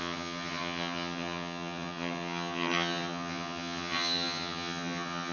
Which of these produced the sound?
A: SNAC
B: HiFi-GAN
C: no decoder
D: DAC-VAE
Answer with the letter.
B